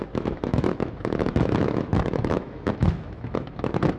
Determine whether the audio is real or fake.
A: fake